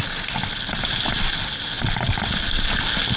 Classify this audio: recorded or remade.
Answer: recorded